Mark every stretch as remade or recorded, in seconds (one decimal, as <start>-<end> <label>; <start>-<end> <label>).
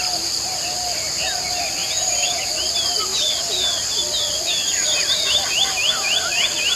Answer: 0.0-1.8 recorded; 1.8-2.4 remade; 2.4-6.8 recorded